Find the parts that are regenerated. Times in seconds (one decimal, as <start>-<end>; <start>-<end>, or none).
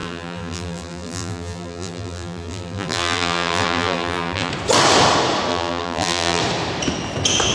0.0-4.5; 5.5-6.4